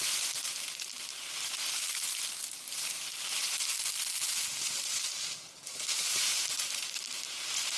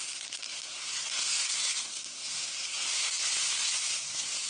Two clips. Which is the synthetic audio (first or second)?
second